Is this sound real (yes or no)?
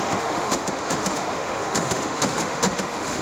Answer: no